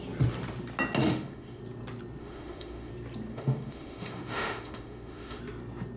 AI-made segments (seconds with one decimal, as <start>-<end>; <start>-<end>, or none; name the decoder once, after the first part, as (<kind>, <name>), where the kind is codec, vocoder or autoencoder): 1.0-1.6 (autoencoder, DAC-VAE); 2.2-2.9; 3.3-5.4